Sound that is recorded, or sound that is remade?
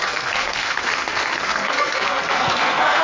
remade